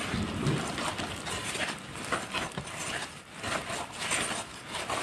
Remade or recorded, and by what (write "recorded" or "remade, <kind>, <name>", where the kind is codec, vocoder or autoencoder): recorded